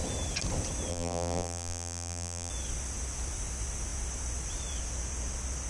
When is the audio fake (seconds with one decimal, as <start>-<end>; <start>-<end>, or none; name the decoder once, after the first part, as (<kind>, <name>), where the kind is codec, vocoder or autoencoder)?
0.9-2.5 (vocoder, BigVGAN v2)